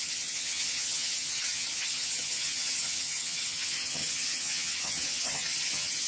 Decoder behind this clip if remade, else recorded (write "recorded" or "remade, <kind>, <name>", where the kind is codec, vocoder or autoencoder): remade, vocoder, HiFi-GAN